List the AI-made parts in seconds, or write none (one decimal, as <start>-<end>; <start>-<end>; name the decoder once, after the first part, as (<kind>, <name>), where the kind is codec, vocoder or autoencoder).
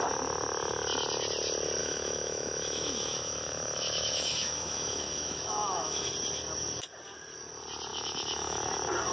1.8-6.1 (autoencoder, DAC-VAE); 7.9-8.6